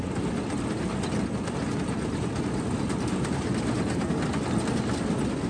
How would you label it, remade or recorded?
recorded